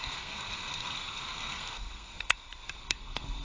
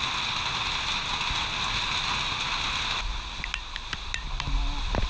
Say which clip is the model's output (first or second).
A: first